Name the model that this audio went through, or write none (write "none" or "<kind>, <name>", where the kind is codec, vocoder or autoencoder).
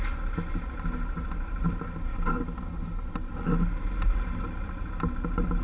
none